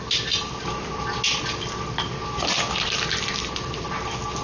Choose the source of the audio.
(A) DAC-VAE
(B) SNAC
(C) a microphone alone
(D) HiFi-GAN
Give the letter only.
C